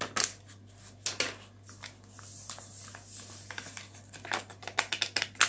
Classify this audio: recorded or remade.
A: recorded